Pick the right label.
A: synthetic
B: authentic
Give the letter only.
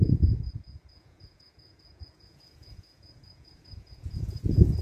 A